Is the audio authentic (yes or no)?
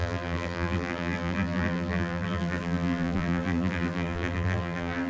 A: no